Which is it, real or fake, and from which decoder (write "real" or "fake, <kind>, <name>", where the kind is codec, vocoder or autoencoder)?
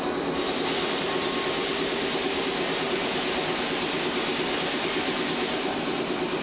real